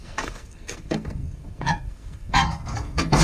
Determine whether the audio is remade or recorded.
remade